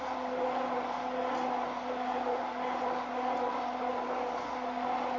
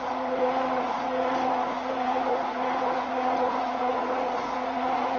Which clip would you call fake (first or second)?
second